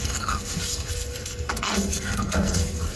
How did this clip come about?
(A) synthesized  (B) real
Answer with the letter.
A